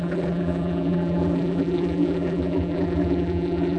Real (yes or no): no